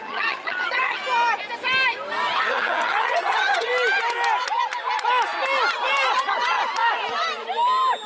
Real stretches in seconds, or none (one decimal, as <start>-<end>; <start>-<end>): 1.0-2.4; 3.7-6.1; 6.6-8.1